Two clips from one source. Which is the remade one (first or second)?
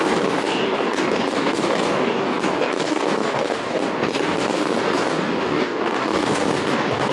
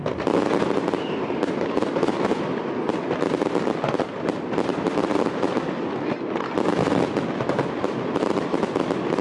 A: first